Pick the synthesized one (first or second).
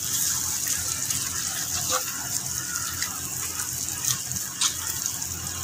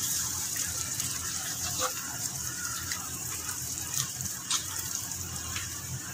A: second